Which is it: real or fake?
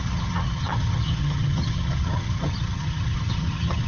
fake